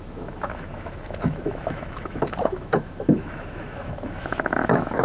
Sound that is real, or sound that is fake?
fake